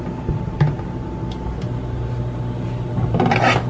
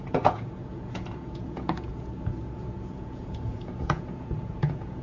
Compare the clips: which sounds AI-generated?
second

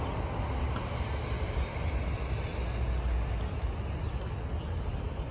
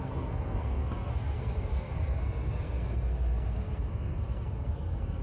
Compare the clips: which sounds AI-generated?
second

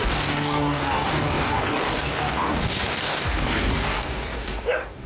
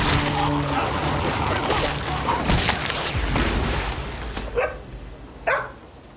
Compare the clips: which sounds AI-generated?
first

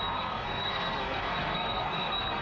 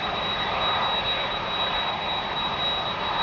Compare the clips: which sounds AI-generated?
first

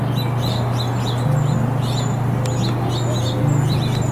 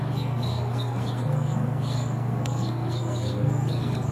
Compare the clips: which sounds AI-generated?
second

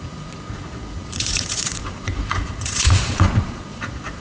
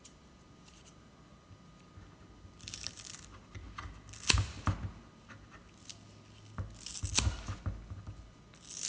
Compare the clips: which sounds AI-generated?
first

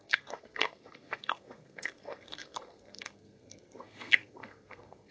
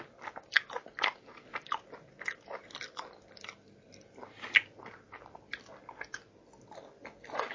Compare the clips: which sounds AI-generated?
first